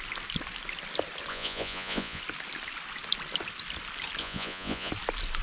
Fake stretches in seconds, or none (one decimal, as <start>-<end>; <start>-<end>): 1.3-2.2; 4.2-4.9